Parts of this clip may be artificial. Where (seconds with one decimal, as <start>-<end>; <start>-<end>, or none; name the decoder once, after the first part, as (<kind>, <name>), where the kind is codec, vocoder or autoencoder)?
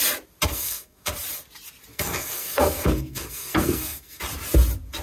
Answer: 0.5-1.1 (codec, SNAC); 1.9-4.2